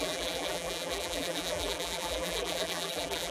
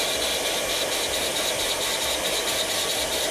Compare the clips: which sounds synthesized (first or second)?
first